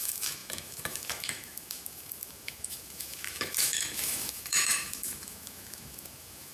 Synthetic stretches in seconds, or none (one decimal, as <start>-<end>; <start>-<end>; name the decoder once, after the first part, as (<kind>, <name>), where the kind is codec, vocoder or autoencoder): 0.0-6.5 (autoencoder, DAC-VAE)